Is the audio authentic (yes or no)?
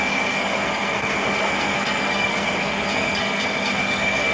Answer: no